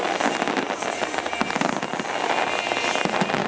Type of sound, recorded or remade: recorded